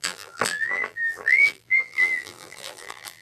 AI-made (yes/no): yes